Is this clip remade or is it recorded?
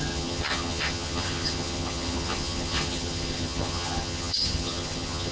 remade